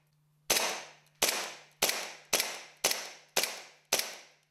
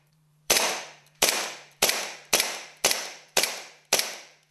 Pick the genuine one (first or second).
first